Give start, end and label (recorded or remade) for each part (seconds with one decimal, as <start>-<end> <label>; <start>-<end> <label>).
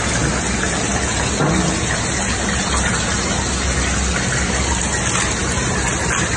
0.0-6.4 recorded